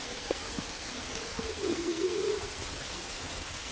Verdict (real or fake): fake